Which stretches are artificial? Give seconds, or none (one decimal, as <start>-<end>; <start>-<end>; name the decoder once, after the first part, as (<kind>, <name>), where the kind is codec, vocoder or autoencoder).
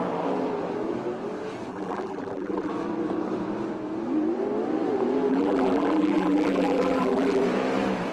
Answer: 1.7-2.7 (vocoder, BigVGAN v2); 5.3-7.4